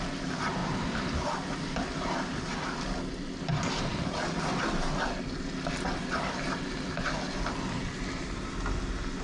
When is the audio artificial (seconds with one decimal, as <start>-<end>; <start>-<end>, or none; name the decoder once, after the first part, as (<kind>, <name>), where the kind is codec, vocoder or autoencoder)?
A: none